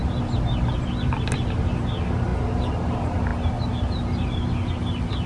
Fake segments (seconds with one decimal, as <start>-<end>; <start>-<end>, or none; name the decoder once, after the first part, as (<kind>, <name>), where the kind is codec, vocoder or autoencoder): none